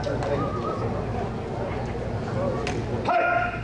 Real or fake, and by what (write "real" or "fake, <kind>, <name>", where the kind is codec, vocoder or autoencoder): real